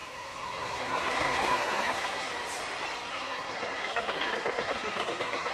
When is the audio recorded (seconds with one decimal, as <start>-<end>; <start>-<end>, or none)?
2.3-3.1